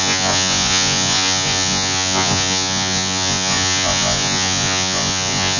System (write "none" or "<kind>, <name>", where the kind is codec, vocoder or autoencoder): vocoder, Vocos